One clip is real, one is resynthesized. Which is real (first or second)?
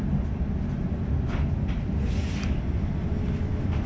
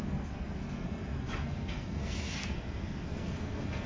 first